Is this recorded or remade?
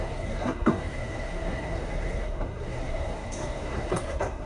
remade